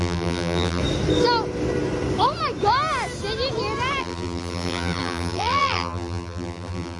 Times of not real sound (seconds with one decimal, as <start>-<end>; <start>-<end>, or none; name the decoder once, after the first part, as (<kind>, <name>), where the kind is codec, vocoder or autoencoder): 0.0-0.8 (vocoder, BigVGAN v2); 4.0-7.0